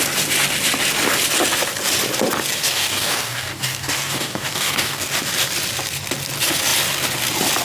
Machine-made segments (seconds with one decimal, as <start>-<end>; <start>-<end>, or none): 2.6-5.0